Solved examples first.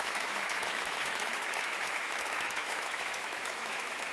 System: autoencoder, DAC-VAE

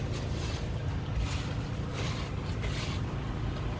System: none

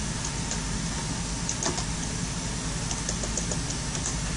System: none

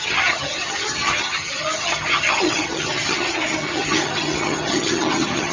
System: vocoder, HiFi-GAN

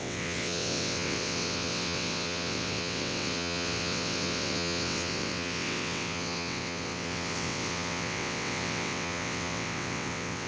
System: vocoder, WaveNeXt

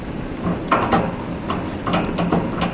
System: none